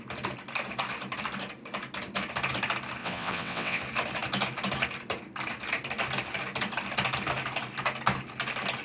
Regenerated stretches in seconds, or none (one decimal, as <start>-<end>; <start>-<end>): 3.0-3.8